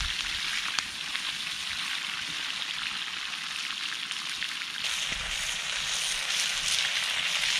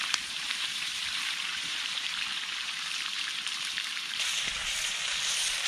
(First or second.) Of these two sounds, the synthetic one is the second